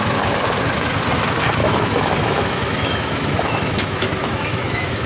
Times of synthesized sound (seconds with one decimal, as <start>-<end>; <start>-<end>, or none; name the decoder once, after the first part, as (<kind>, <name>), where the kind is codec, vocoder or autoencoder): 1.6-5.1 (autoencoder, DAC-VAE)